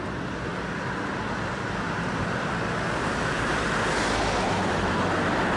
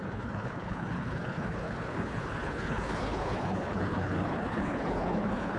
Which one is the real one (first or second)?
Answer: first